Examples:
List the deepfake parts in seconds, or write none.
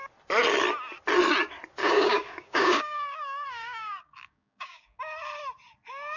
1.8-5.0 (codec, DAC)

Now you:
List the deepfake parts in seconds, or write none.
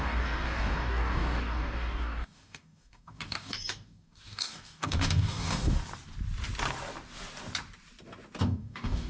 0.0-5.8 (codec, DAC); 8.4-9.1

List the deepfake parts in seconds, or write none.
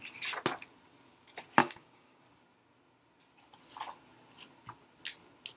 1.6-2.2 (codec, DAC)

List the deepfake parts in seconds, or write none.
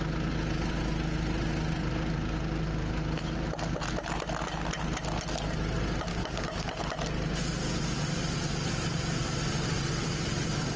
6.1-6.8 (codec, DAC)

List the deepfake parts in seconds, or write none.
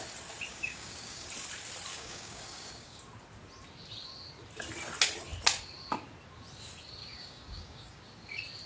0.5-1.3 (codec, DAC); 1.9-3.0; 7.0-8.0